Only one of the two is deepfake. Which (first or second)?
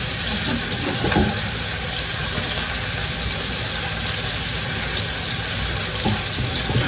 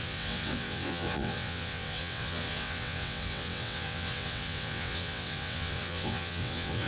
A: second